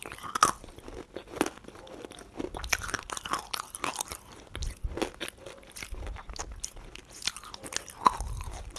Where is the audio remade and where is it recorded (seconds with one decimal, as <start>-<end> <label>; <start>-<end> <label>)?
0.0-8.8 recorded